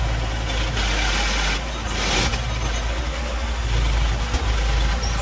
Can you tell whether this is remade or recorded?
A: recorded